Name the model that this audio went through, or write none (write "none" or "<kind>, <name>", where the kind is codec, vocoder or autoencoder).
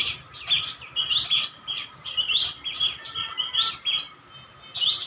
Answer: none